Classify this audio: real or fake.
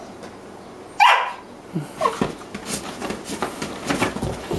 real